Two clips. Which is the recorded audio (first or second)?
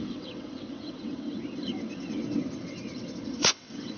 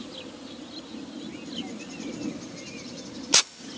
second